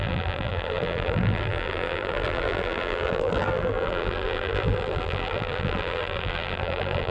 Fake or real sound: fake